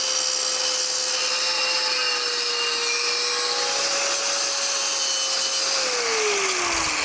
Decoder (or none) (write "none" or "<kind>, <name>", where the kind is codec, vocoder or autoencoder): none